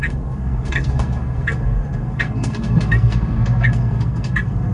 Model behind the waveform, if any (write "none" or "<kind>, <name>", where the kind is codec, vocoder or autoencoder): codec, SNAC